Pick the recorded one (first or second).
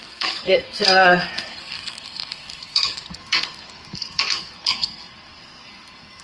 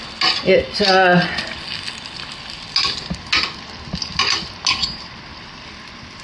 second